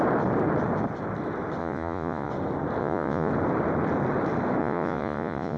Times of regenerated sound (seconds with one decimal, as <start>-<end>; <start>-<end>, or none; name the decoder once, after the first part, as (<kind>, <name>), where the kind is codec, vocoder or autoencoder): 1.6-2.3 (vocoder, Vocos); 2.8-3.3; 4.6-5.6